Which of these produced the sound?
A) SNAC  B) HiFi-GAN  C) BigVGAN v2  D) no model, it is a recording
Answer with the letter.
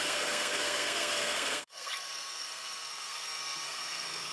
A